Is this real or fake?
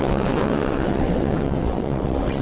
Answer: fake